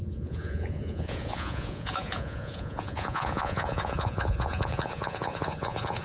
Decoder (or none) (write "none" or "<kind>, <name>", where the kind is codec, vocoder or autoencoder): vocoder, Vocos